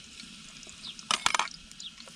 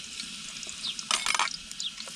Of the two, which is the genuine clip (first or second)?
second